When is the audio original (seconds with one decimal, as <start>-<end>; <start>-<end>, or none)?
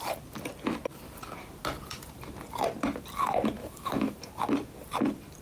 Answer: 0.0-3.6; 4.2-5.4